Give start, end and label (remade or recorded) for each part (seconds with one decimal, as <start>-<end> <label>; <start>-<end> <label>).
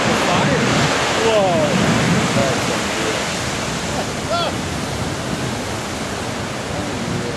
0.0-7.4 recorded